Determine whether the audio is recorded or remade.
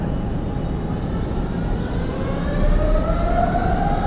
recorded